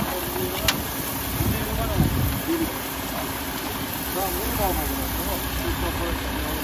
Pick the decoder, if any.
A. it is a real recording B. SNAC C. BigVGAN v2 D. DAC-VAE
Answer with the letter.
A